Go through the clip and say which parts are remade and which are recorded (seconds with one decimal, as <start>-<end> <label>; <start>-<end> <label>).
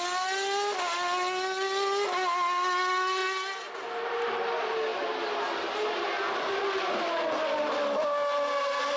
0.0-9.0 recorded